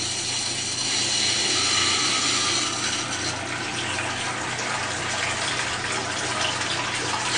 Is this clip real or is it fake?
real